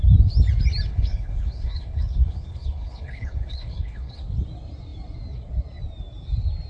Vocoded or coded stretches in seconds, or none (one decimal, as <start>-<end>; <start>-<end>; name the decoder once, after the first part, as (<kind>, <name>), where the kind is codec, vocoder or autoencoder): 0.9-4.2 (codec, HILCodec)